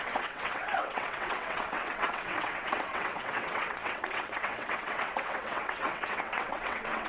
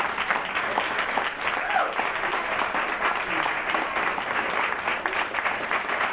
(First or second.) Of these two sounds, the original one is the second